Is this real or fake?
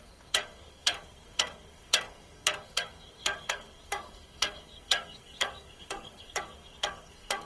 fake